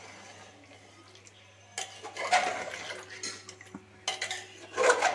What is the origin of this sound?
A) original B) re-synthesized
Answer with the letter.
A